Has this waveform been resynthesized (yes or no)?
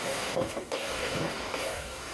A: yes